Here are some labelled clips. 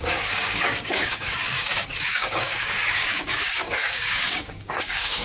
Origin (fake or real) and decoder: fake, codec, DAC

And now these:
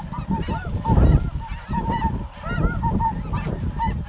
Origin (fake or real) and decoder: real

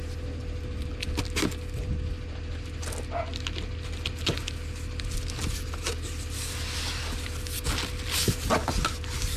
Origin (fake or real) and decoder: real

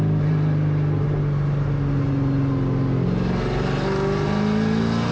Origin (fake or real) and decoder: real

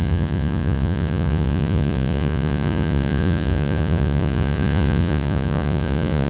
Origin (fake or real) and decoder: fake, vocoder, Vocos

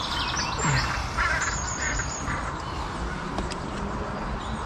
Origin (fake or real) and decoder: real